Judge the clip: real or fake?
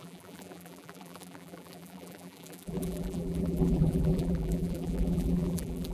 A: fake